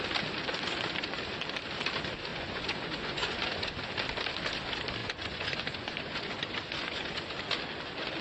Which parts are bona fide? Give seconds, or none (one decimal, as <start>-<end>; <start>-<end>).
0.0-2.3; 3.8-5.0; 7.3-8.2